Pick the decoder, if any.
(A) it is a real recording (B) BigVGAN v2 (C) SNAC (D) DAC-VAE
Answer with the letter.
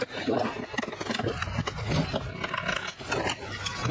A